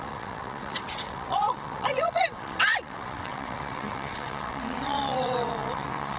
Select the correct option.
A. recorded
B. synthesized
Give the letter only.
B